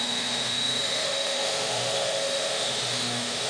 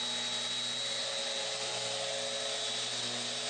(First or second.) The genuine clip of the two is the second